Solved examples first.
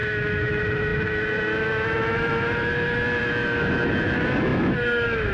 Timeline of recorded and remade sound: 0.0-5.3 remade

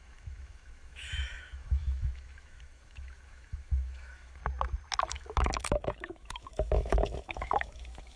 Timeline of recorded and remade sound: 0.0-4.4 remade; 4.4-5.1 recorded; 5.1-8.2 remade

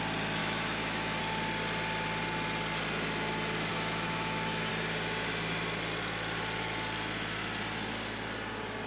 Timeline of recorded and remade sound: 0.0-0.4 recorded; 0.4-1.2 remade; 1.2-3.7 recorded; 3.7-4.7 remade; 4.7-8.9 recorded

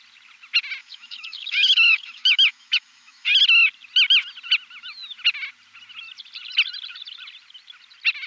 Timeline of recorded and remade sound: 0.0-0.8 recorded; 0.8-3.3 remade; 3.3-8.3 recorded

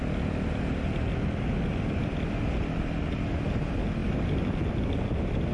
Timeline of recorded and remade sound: 0.0-5.5 recorded